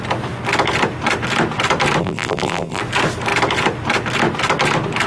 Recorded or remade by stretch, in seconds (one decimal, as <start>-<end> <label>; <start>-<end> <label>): 0.0-2.0 recorded; 2.0-2.8 remade; 2.8-5.1 recorded